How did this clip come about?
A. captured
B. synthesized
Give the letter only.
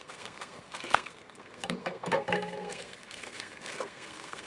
B